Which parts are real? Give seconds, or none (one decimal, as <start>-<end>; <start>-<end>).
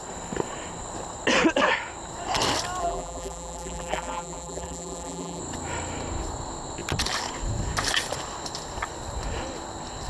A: 0.0-2.8; 5.4-10.1